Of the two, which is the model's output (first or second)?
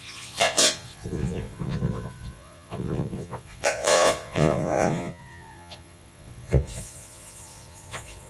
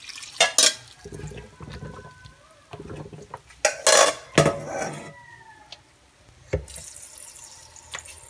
first